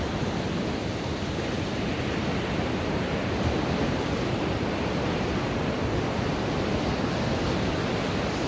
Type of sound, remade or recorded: recorded